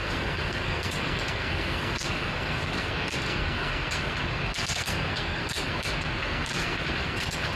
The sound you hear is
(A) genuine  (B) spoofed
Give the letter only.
B